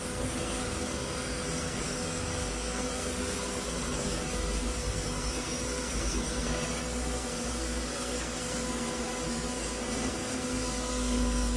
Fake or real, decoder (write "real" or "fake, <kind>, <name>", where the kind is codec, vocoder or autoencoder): fake, codec, SNAC